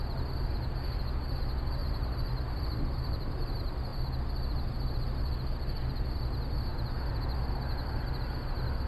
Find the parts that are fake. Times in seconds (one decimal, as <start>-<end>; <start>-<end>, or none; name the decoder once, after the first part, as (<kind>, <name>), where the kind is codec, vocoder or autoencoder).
1.8-2.8 (vocoder, BigVGAN v2)